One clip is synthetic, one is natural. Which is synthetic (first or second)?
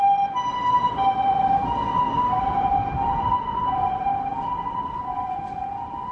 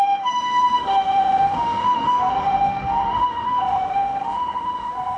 second